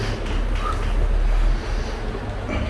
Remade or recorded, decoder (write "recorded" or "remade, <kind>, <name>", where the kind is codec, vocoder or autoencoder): recorded